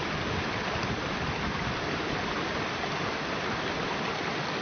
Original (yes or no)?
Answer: yes